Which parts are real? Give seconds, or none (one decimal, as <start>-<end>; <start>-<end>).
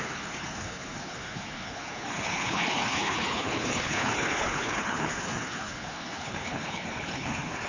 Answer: none